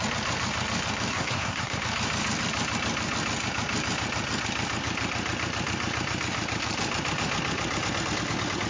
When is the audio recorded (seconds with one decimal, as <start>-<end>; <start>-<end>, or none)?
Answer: 0.0-1.1; 1.8-8.7